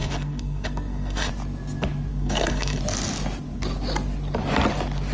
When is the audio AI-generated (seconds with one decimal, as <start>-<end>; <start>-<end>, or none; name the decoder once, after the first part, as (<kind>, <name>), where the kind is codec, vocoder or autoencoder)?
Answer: 0.0-1.3 (codec, SNAC); 2.1-2.8